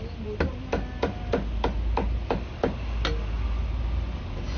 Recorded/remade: recorded